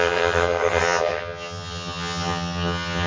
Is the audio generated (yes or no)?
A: yes